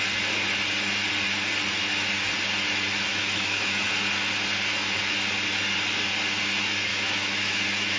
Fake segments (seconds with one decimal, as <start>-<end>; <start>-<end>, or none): 3.1-3.9; 6.9-8.0